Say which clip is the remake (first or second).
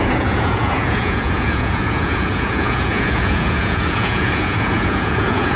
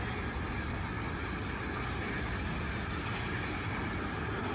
first